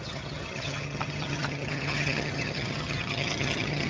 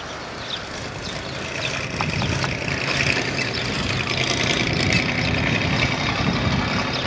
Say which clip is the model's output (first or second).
first